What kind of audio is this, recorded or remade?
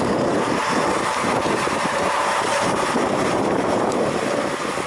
remade